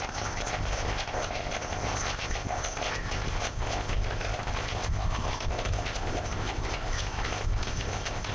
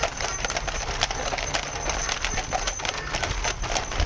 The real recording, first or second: second